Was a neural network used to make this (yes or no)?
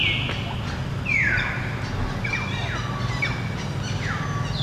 no